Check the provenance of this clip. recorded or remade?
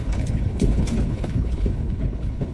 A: remade